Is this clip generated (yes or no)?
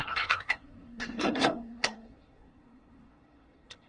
yes